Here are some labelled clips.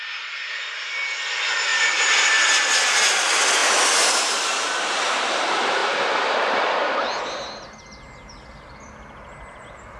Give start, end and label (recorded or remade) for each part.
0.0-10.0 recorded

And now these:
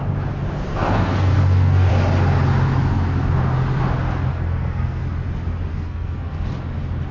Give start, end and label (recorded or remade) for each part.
0.0-0.7 recorded; 0.7-1.9 remade; 1.9-4.3 recorded; 4.3-5.0 remade; 5.0-5.7 recorded; 5.7-6.5 remade; 6.5-7.1 recorded

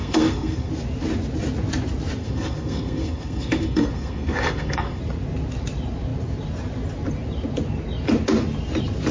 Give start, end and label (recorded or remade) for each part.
0.0-0.7 remade; 0.7-2.2 recorded; 2.2-5.0 remade; 5.0-9.1 recorded

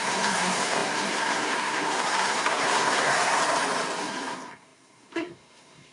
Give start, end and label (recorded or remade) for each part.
0.0-3.4 remade; 3.4-4.0 recorded; 4.0-5.9 remade

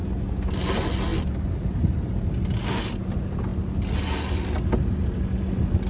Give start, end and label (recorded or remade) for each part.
0.0-5.9 recorded

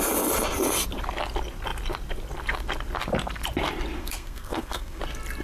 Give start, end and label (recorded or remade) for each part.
0.0-4.0 recorded; 4.0-5.0 remade; 5.0-5.4 recorded